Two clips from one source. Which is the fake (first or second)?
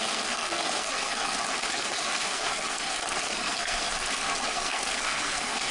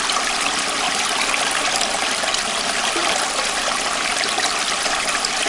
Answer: first